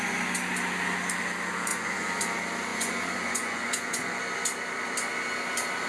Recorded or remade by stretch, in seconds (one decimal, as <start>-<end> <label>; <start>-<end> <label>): 0.0-1.7 recorded; 1.7-2.2 remade; 2.2-2.7 recorded; 2.7-4.2 remade; 4.2-5.9 recorded